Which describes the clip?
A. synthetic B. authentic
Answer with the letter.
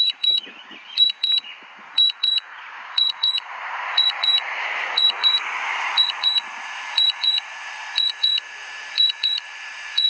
A